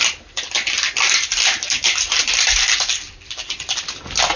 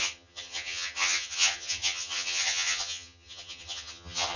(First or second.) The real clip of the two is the first